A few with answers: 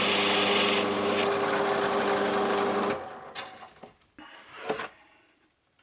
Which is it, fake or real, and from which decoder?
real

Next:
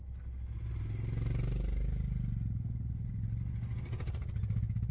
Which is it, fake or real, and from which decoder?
real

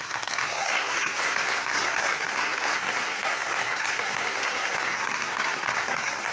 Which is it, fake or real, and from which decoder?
fake, codec, SNAC